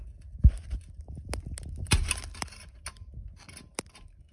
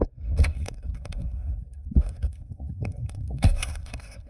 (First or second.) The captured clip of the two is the first